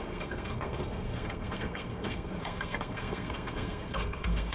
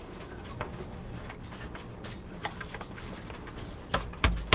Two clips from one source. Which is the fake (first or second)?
first